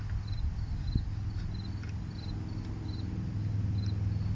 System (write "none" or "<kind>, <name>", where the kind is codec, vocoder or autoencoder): none